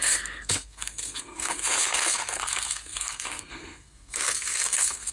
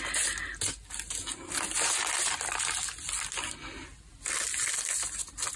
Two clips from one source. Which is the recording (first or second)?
second